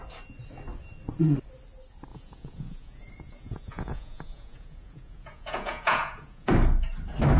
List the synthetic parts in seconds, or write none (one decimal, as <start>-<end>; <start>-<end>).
2.1-6.5